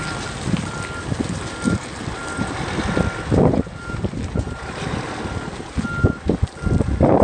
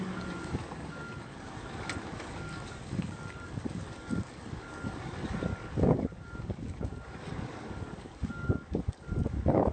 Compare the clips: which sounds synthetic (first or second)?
second